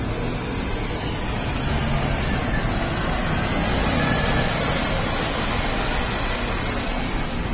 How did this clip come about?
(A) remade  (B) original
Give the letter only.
B